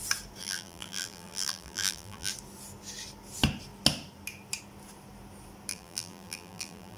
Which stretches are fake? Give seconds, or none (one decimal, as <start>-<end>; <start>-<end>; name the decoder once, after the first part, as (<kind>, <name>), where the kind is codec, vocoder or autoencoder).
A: 0.4-2.3 (vocoder, BigVGAN v2); 5.7-7.0